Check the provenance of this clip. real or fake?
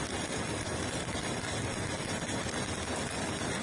real